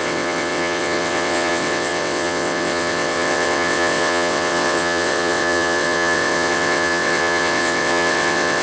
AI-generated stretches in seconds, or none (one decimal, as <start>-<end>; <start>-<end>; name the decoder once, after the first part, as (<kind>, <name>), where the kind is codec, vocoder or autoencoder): 0.0-8.6 (vocoder, WaveNeXt)